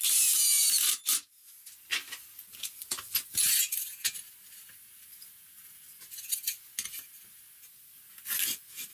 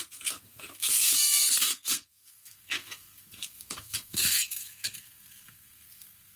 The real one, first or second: first